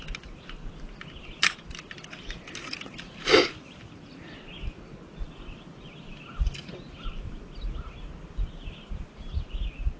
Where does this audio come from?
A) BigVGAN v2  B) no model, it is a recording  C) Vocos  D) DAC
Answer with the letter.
B